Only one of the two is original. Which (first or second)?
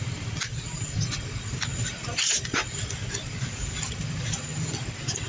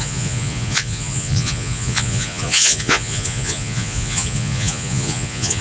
first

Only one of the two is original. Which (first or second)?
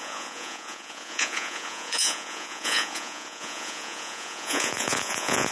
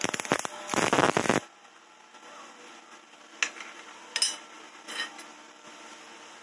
second